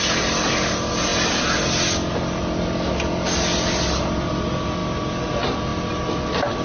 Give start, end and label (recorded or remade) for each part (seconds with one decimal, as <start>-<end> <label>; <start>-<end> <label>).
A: 0.0-6.6 recorded